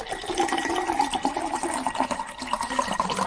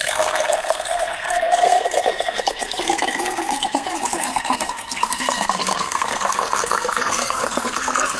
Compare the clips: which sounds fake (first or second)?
second